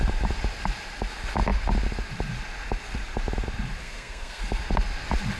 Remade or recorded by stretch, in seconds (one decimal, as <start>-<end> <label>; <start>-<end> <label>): 0.0-3.8 recorded; 3.8-4.4 remade; 4.4-5.4 recorded